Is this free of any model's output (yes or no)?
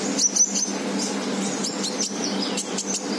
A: yes